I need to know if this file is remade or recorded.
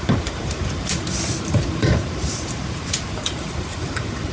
remade